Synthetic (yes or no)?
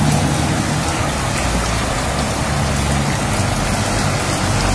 no